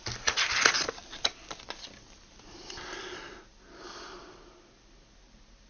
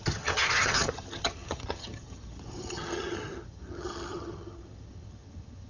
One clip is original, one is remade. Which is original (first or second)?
first